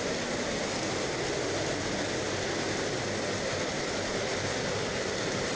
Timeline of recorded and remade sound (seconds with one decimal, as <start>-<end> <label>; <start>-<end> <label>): 0.0-5.6 recorded